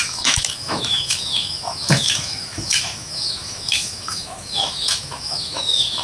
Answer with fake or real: fake